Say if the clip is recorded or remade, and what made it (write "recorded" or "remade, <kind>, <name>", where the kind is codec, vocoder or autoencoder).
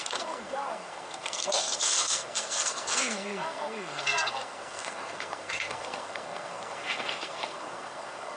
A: remade, codec, SNAC